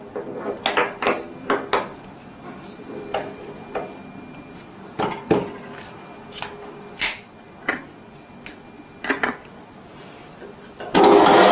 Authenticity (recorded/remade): recorded